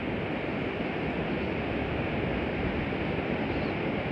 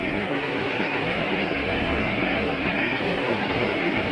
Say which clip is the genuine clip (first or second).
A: first